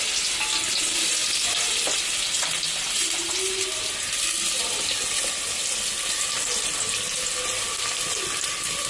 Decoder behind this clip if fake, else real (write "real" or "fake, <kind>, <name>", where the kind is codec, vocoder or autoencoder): real